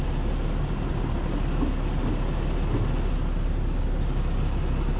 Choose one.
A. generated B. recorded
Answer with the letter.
B